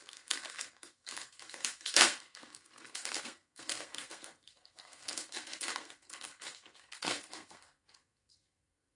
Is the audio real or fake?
fake